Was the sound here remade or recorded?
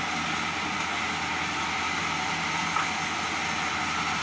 recorded